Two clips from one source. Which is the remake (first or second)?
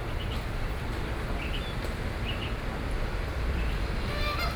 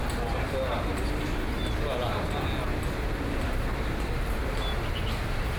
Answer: first